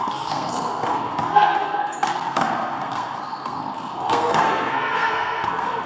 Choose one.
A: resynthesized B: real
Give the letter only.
A